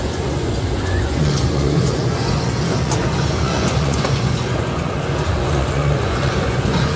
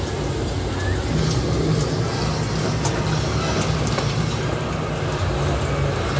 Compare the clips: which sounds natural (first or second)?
second